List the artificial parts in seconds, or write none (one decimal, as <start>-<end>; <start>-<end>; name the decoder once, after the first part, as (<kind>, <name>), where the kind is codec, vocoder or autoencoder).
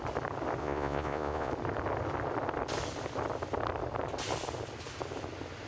0.6-1.5 (vocoder, Vocos)